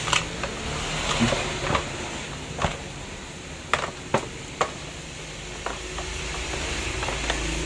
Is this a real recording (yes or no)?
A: yes